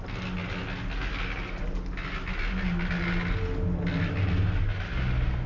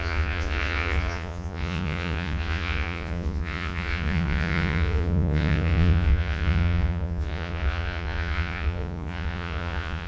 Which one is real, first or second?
first